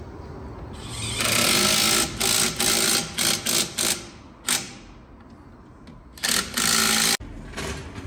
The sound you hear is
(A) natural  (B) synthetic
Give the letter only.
A